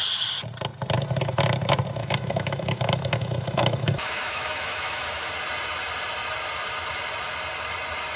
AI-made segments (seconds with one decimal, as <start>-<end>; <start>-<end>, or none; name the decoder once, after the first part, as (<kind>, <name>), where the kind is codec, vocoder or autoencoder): 2.0-5.3 (autoencoder, DAC-VAE)